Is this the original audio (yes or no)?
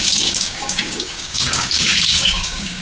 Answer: no